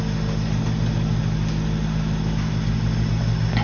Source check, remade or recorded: recorded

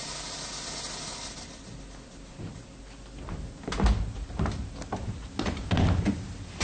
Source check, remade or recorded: recorded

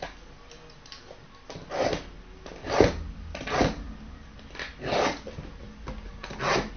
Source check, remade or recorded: recorded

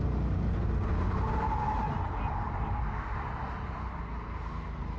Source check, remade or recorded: recorded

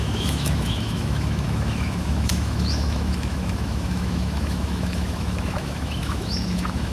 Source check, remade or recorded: remade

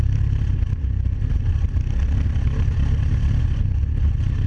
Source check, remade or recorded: recorded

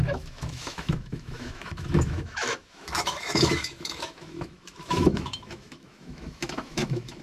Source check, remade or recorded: remade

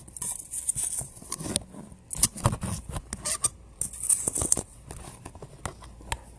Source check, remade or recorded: recorded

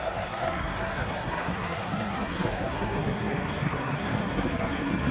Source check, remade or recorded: remade